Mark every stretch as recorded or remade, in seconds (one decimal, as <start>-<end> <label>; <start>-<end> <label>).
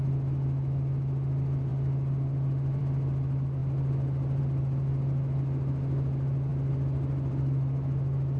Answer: 0.0-8.4 recorded